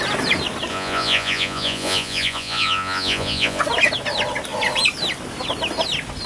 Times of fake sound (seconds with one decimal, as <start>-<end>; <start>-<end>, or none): 0.7-3.6